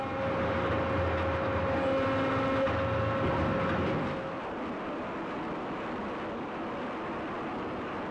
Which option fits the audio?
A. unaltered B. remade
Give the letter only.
A